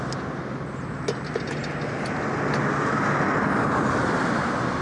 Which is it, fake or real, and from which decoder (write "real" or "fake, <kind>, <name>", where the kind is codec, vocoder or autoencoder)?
real